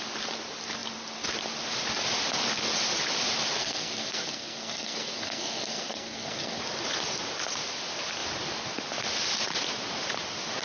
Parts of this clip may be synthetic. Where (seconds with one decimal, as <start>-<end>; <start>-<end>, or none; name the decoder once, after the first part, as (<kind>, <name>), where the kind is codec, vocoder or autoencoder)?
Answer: 3.6-6.6 (codec, SNAC)